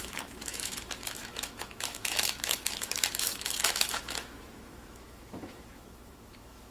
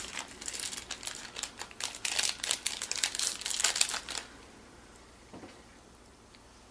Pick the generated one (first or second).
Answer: first